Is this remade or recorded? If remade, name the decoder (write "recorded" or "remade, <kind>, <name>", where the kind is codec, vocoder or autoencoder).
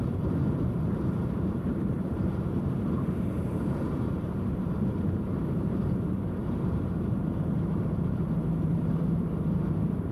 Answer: remade, vocoder, BigVGAN v2